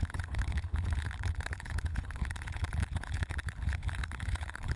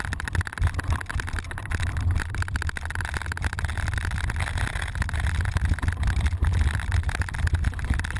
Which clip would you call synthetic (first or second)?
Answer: first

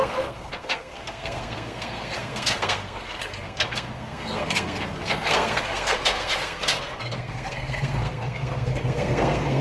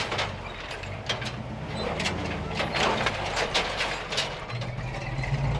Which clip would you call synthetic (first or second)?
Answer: first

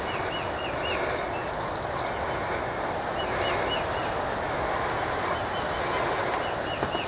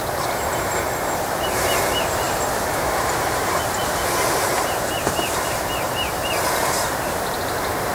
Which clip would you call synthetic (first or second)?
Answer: second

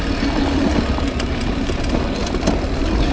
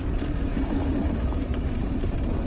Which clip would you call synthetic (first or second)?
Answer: second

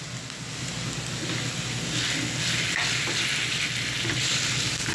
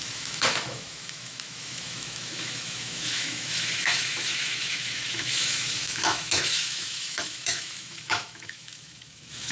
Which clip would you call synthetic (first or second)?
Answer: second